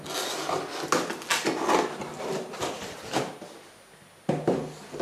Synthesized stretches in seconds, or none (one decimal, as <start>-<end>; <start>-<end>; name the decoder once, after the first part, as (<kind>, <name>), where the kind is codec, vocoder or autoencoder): none